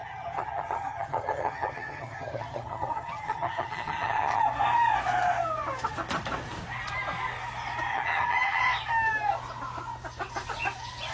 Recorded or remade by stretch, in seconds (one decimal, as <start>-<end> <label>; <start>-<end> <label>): 0.0-4.4 remade; 4.4-7.9 recorded; 7.9-8.6 remade; 8.6-11.1 recorded